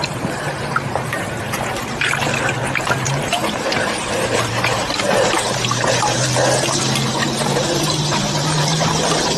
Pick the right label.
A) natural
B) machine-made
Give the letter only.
B